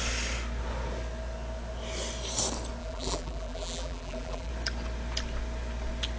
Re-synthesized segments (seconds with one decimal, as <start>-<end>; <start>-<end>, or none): 2.8-4.5